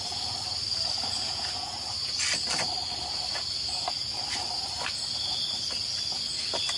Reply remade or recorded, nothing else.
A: recorded